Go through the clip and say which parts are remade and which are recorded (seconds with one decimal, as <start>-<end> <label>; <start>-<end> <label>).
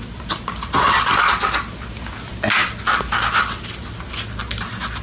0.0-5.0 recorded